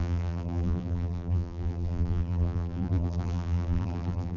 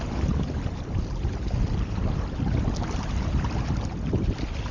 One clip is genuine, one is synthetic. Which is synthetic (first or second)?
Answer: first